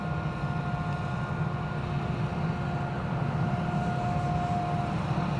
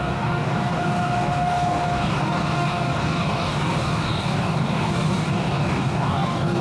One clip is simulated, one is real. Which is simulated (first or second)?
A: second